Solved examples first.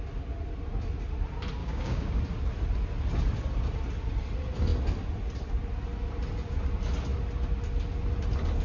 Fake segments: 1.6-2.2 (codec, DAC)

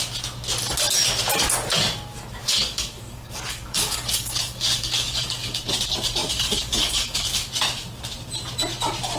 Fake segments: 2.4-5.6 (codec, DAC); 6.2-7.5

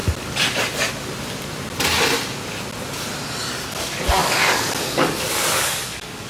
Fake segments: 3.8-6.3 (codec, DAC)

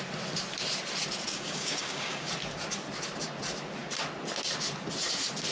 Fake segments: 1.3-2.3 (codec, DAC)

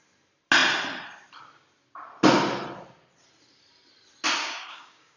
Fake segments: 4.4-5.2 (codec, DAC)

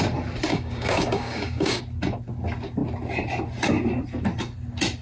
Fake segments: 0.5-1.8 (codec, DAC)

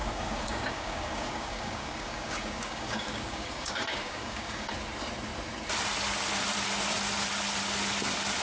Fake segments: 0.0-4.7 (codec, DAC)